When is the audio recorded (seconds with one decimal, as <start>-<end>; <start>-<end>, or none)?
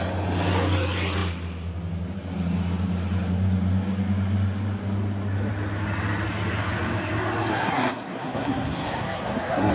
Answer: 0.0-7.5